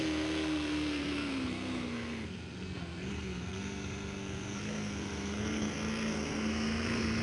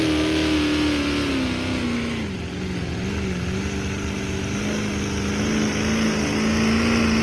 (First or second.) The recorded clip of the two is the second